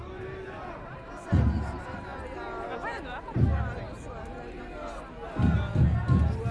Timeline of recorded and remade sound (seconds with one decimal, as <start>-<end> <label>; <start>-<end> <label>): 0.0-6.5 recorded